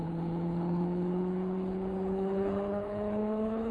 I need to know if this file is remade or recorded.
remade